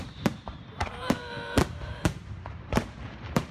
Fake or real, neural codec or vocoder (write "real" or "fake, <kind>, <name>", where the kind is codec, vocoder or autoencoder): fake, vocoder, BigVGAN v2